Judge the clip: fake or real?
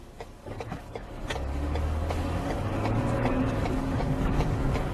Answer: fake